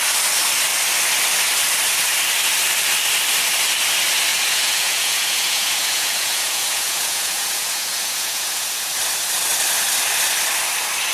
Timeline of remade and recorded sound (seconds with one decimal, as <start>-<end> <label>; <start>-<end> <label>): 0.0-4.3 recorded; 4.3-9.0 remade; 9.0-11.1 recorded